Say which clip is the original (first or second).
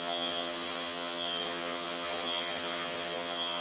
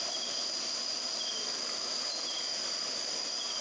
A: second